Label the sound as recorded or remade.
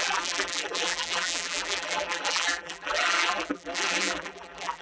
remade